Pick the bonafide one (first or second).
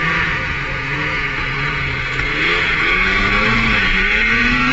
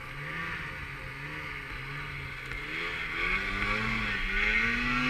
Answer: second